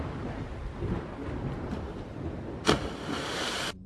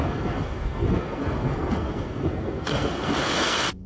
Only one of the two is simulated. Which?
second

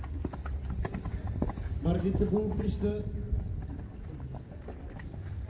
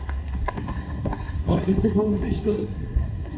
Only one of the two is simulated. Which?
second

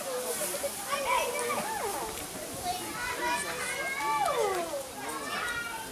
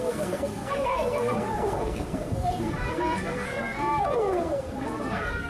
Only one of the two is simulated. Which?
second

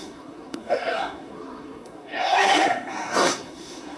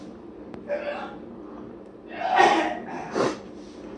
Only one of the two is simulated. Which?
first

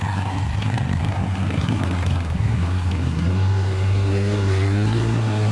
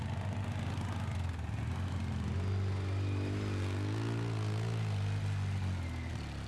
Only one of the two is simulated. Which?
first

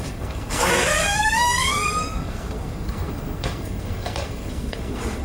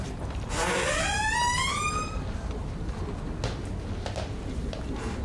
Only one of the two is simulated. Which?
first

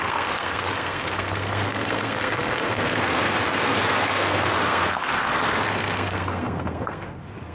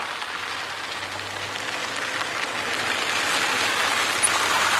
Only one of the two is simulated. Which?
first